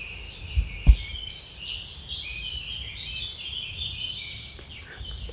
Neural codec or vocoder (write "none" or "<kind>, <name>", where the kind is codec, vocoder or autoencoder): none